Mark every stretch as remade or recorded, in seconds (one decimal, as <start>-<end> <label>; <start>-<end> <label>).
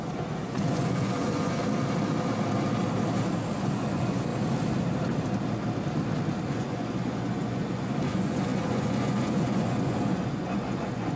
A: 0.0-1.6 remade; 1.6-3.6 recorded; 3.6-4.3 remade; 4.3-6.5 recorded; 6.5-11.2 remade